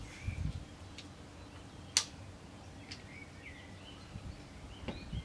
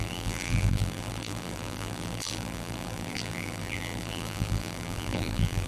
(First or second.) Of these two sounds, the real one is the first